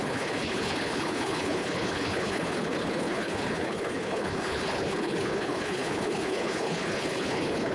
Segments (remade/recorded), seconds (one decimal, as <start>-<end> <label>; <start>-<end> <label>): 0.0-7.7 remade

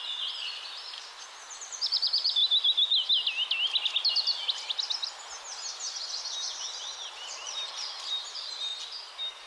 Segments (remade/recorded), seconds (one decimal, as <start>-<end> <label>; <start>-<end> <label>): 0.0-2.4 remade; 2.4-6.1 recorded; 6.1-8.7 remade; 8.7-9.5 recorded

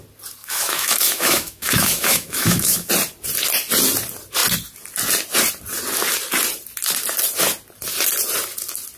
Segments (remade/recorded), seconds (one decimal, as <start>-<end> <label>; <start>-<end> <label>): 0.0-0.4 recorded; 0.4-2.9 remade; 2.9-9.0 recorded